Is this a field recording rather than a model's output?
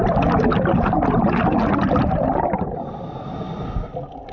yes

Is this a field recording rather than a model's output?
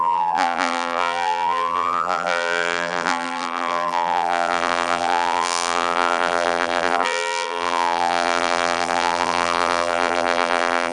no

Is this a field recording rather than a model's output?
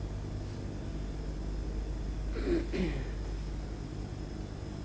yes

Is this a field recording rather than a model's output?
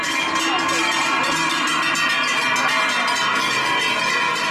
no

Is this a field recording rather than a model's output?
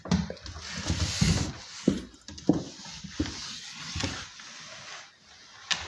yes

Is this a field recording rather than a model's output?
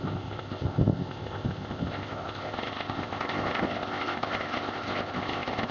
no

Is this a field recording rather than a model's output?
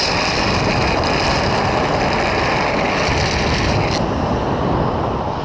yes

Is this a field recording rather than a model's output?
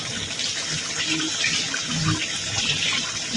yes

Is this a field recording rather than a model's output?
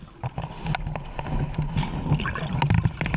yes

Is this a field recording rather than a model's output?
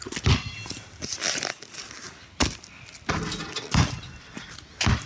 yes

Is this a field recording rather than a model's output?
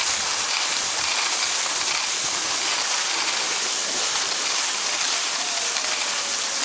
yes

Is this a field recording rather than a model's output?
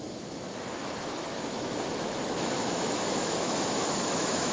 no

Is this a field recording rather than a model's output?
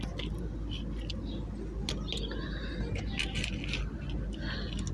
yes